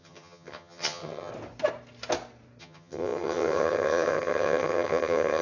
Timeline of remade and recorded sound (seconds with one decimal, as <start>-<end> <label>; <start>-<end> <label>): 0.0-1.3 remade; 1.3-2.6 recorded; 2.6-5.4 remade

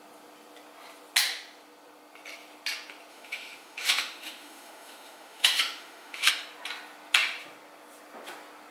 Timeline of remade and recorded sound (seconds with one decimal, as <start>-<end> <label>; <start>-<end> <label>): 0.0-3.1 recorded; 3.1-6.3 remade; 6.3-8.7 recorded

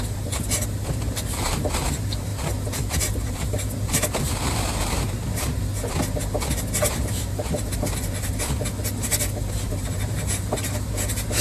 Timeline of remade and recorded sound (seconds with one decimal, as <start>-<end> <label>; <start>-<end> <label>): 0.0-2.3 remade; 2.3-3.1 recorded; 3.1-5.7 remade; 5.7-6.9 recorded; 6.9-8.3 remade; 8.3-9.7 recorded; 9.7-11.4 remade

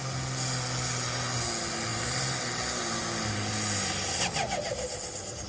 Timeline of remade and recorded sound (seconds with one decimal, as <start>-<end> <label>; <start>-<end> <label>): 0.0-5.5 recorded

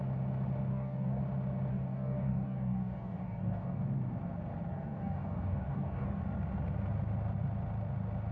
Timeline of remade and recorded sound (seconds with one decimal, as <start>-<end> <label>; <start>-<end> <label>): 0.0-0.7 recorded; 0.7-1.2 remade; 1.2-1.7 recorded; 1.7-3.8 remade; 3.8-4.7 recorded; 4.7-6.2 remade; 6.2-8.3 recorded